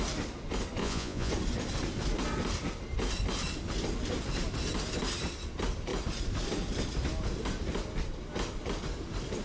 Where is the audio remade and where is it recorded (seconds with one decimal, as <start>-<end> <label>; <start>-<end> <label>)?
0.0-0.8 recorded; 0.8-1.3 remade; 1.3-9.4 recorded